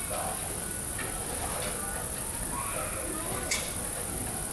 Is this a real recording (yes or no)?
yes